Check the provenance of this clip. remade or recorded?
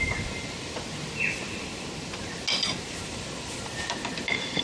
recorded